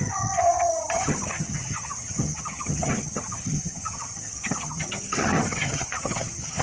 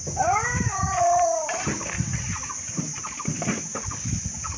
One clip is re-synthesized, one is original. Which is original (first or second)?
second